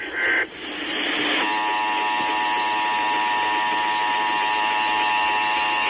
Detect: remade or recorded recorded